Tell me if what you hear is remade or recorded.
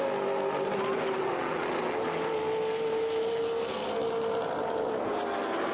recorded